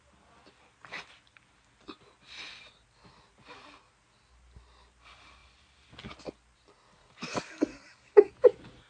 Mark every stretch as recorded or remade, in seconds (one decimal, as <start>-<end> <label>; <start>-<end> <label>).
0.0-7.0 recorded; 7.0-8.3 remade; 8.3-8.9 recorded